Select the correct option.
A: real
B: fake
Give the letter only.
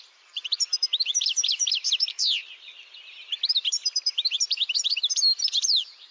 B